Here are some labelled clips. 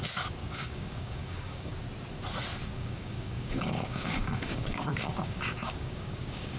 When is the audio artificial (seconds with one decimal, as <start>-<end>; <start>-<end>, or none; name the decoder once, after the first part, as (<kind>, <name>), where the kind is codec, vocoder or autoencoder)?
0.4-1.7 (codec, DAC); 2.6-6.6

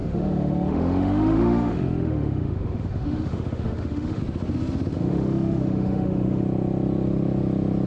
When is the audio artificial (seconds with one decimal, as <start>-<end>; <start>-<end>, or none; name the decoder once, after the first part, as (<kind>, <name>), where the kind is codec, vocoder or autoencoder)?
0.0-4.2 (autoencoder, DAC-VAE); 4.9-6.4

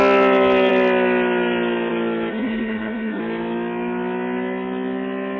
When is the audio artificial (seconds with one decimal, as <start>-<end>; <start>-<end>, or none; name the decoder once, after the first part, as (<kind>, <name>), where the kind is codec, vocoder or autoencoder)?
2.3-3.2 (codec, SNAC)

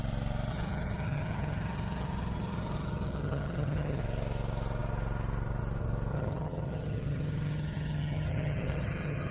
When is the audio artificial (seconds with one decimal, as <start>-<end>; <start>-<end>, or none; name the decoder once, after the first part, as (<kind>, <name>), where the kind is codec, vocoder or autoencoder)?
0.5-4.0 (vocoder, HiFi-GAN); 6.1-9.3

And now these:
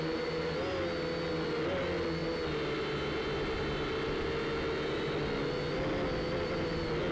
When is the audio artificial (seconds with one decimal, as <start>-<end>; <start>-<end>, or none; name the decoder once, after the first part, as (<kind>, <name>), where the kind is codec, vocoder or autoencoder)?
none

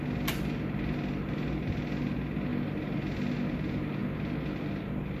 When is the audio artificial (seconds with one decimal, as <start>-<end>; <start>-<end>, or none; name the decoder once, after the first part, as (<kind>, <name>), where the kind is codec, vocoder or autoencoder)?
none

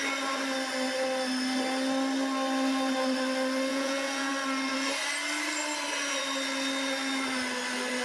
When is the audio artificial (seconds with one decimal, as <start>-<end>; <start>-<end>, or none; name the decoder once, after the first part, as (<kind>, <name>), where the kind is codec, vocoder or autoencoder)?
3.7-4.3 (vocoder, Vocos)